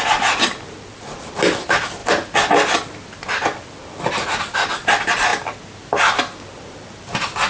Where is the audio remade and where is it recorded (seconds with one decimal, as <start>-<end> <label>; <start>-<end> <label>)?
0.0-5.3 recorded; 5.3-6.2 remade; 6.2-7.5 recorded